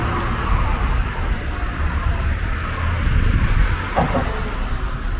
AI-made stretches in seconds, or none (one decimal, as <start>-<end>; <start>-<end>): none